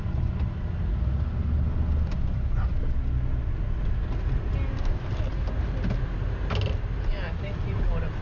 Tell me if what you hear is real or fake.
real